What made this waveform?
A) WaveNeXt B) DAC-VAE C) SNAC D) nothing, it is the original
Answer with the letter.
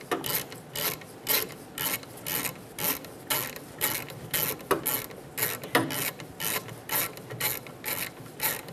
D